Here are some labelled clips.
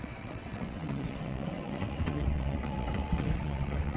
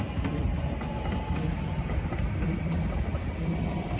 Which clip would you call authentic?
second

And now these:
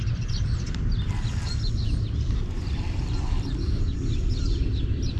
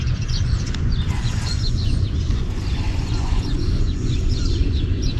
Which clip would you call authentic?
first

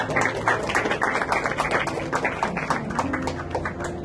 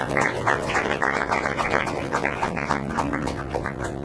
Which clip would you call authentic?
first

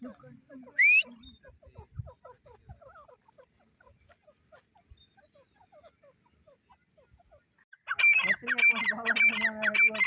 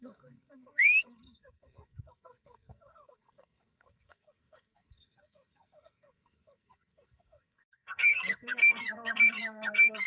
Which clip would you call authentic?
first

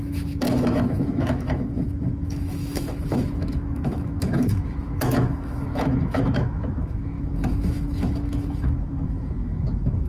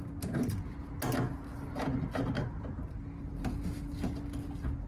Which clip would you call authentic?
second